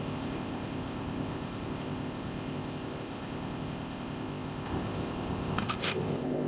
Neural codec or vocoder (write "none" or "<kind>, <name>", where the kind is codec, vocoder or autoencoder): codec, ZipCodec